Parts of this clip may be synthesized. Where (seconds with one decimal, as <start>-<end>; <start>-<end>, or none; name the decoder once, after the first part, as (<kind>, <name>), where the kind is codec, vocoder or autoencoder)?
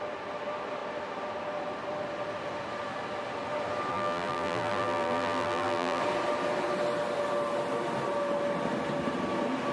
3.9-6.0 (vocoder, BigVGAN v2)